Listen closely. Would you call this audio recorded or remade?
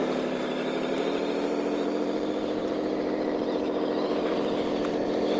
remade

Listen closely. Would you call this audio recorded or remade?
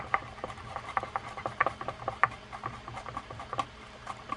remade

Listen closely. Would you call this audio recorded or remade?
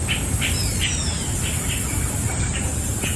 remade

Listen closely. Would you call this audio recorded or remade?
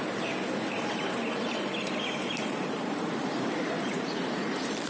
remade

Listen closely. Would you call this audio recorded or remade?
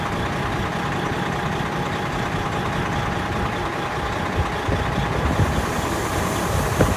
remade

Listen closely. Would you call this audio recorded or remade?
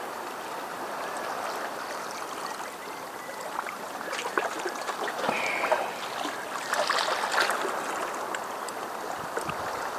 remade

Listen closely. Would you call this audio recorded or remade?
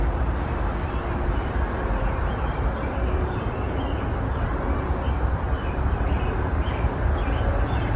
remade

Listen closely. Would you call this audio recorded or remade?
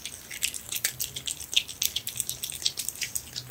recorded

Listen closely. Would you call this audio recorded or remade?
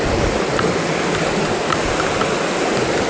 recorded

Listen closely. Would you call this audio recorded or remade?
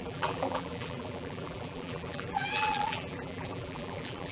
remade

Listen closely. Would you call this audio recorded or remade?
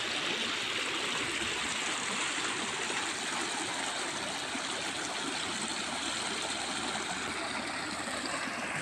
recorded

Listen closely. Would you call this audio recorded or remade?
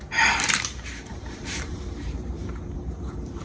remade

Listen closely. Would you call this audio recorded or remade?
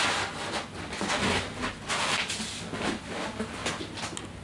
recorded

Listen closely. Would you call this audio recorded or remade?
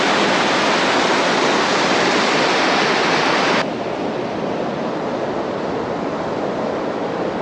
recorded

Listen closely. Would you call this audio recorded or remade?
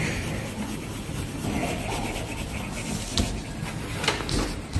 recorded